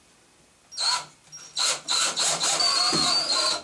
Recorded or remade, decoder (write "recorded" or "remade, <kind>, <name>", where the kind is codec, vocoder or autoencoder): recorded